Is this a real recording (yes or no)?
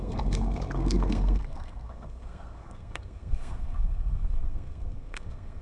no